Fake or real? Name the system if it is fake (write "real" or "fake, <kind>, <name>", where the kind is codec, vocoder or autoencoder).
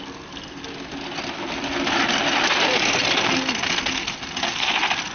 real